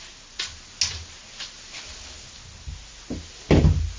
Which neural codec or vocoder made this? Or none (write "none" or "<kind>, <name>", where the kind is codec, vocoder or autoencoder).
none